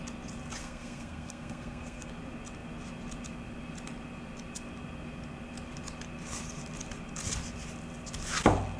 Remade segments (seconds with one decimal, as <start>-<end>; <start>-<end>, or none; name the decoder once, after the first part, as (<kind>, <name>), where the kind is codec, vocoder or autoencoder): 0.6-2.1 (codec, SNAC)